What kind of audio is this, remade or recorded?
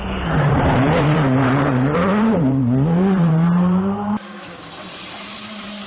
remade